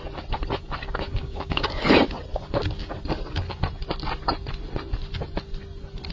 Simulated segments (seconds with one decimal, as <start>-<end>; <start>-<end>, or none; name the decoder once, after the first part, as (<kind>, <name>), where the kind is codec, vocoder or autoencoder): 1.2-1.8 (codec, DAC)